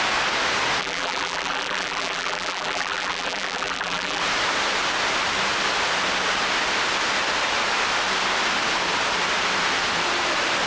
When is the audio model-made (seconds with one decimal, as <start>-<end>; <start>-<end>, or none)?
0.8-4.2